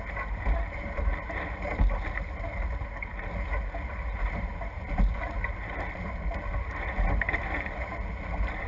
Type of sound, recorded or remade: remade